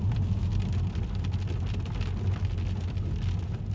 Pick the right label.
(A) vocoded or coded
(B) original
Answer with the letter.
B